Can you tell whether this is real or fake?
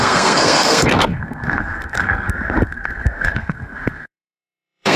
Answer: fake